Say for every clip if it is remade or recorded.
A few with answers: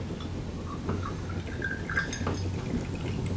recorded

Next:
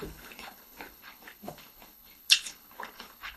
remade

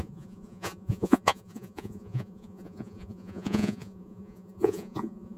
remade